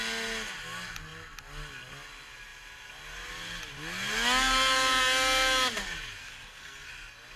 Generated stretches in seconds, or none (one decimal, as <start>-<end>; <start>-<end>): 6.2-6.9